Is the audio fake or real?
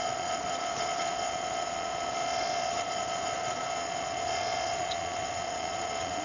fake